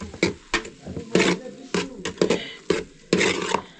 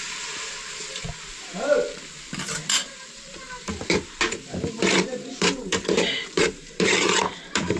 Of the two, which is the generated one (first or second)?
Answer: second